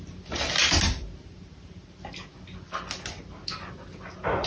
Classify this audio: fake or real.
real